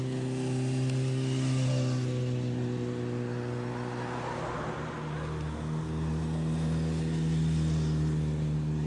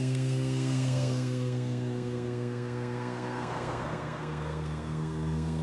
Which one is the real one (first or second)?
first